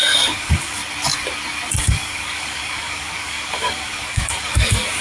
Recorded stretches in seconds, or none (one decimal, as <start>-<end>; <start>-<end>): 0.8-1.8